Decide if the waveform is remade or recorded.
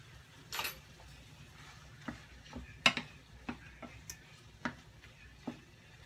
recorded